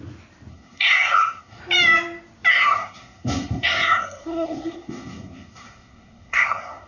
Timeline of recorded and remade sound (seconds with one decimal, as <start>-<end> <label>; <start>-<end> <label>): 0.0-0.5 recorded; 0.5-1.6 remade; 1.6-2.5 recorded; 2.5-6.9 remade

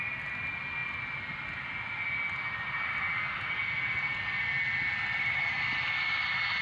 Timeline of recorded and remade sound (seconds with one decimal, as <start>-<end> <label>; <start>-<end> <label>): 0.0-6.6 recorded

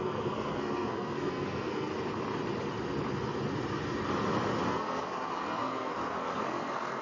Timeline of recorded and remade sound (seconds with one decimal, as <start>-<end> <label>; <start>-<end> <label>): 0.0-1.9 remade; 1.9-4.7 recorded; 4.7-7.0 remade

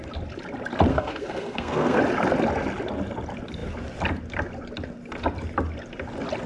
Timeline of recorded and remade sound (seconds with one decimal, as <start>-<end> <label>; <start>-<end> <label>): 0.0-0.9 recorded; 0.9-2.0 remade; 2.0-6.5 recorded

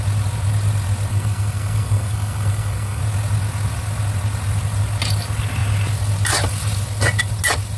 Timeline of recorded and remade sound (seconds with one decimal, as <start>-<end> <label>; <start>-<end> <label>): 0.0-1.1 recorded; 1.1-3.0 remade; 3.0-7.8 recorded

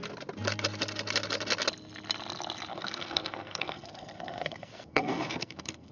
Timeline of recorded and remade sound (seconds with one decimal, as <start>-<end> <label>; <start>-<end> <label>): 0.0-2.7 recorded; 2.7-5.9 remade